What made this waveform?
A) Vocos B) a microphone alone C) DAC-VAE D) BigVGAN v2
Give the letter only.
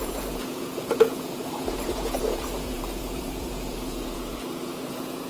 A